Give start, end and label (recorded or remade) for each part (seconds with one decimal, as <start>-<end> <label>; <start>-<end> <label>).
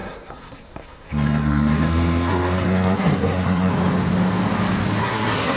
0.0-3.7 remade; 3.7-5.0 recorded; 5.0-5.6 remade